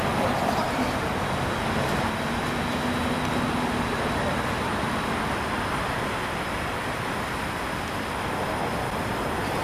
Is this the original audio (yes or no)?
yes